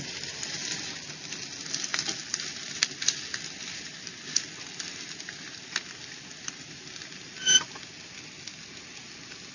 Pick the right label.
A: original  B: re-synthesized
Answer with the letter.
A